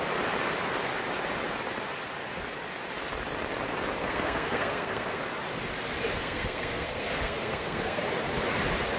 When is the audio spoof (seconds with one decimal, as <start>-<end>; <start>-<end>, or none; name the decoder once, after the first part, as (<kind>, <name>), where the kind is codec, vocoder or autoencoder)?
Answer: 4.0-5.2 (codec, SNAC); 6.2-8.0